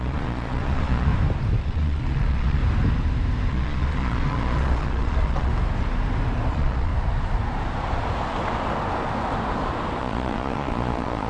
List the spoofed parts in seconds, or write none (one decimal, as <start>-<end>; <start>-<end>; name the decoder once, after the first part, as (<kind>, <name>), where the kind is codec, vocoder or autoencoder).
0.0-1.1 (vocoder, Vocos); 1.6-2.6; 3.5-5.5; 6.5-6.9; 10.0-11.3